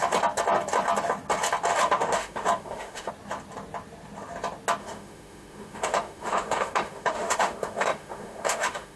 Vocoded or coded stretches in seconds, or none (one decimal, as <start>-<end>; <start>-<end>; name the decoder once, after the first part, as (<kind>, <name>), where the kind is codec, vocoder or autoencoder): 1.7-3.1 (autoencoder, DAC-VAE); 4.8-9.0